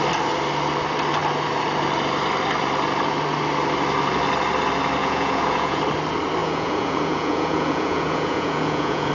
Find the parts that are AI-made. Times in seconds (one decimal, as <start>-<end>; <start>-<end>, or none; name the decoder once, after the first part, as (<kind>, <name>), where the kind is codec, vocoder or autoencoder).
5.0-5.8 (vocoder, Vocos); 6.4-9.1